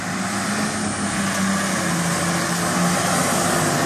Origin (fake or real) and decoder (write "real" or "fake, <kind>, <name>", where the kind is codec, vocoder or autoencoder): real